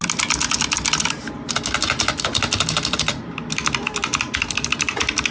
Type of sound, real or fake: real